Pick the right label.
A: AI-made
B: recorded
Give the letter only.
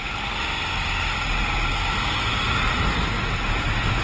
B